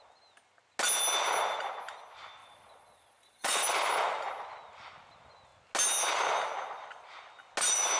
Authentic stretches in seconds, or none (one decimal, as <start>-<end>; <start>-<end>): 0.0-2.4; 3.6-8.0